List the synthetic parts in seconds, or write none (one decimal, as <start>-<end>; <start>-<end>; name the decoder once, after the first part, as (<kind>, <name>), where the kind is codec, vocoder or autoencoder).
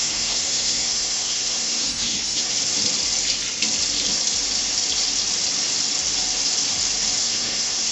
0.0-2.5 (codec, SNAC); 7.2-7.9